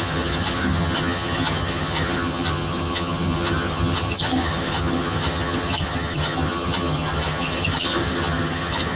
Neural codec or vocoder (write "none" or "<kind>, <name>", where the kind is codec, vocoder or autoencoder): vocoder, HiFi-GAN